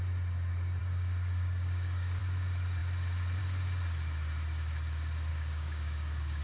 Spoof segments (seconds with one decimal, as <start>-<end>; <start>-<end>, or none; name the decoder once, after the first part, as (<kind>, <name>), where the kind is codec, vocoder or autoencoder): 0.8-2.2 (codec, DAC); 5.3-6.4

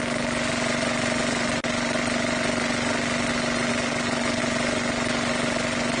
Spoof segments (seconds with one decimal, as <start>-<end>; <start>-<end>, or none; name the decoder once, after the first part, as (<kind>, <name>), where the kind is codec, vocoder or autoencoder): 3.7-4.4 (codec, DAC)

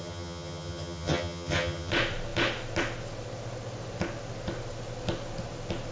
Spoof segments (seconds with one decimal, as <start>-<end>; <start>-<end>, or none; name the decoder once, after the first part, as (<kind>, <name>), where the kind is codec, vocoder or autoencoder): 0.0-1.9 (vocoder, HiFi-GAN)

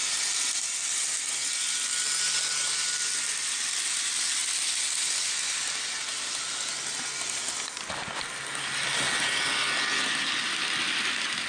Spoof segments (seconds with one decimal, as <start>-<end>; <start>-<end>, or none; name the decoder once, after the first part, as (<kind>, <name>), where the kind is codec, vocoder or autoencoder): 0.0-3.9 (vocoder, BigVGAN v2)